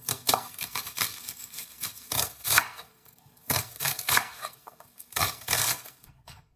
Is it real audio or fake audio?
fake